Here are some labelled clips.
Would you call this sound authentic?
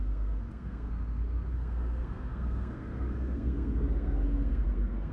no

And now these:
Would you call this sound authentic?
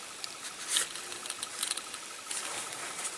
yes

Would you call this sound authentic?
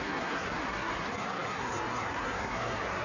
no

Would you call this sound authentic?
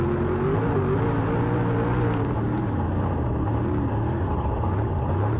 yes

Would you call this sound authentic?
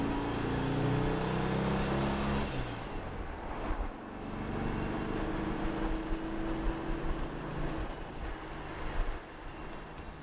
yes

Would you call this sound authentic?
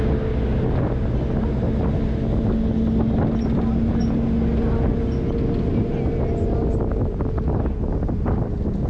yes